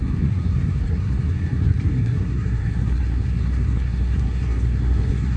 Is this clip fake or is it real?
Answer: fake